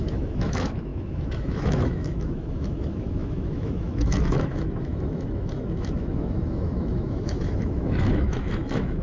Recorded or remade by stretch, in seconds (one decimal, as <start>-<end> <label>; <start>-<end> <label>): 0.0-9.0 remade